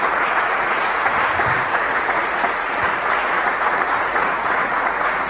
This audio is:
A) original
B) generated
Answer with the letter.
B